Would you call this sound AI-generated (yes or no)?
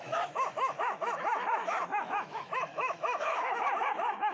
yes